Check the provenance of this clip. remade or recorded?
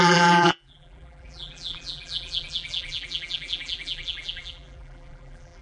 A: remade